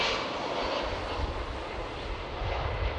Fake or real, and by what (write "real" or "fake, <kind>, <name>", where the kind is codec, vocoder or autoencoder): real